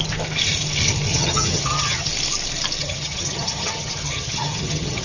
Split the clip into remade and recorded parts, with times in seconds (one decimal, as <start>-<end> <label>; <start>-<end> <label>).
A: 0.0-1.1 recorded; 1.1-2.1 remade; 2.1-2.8 recorded; 2.8-5.0 remade